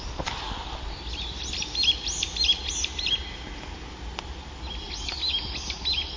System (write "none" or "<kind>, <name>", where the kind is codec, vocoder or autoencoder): none